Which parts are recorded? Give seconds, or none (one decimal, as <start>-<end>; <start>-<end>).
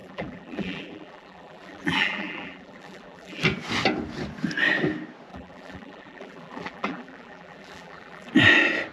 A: 3.4-5.3; 8.3-8.9